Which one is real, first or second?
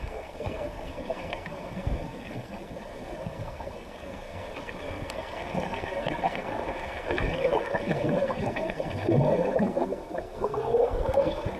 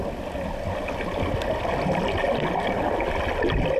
second